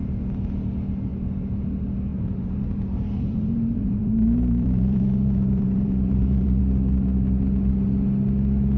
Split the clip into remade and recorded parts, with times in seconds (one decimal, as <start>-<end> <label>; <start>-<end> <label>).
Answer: 0.0-1.1 recorded; 1.1-1.6 remade; 1.6-2.1 recorded; 2.1-6.6 remade; 6.6-8.8 recorded